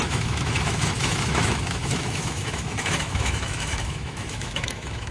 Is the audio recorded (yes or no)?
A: no